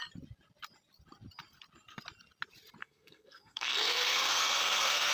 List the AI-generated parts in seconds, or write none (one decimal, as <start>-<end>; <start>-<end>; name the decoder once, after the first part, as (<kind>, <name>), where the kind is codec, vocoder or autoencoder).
2.8-5.1 (codec, SNAC)